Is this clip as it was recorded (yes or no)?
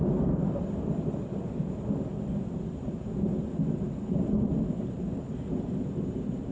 yes